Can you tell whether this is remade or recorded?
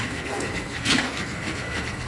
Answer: remade